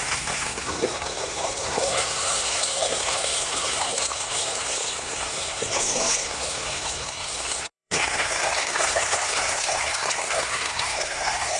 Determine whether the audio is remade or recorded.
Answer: remade